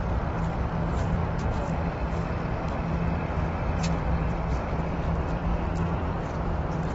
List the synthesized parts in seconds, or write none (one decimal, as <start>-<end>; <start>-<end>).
0.0-1.2; 4.3-5.5; 6.1-6.9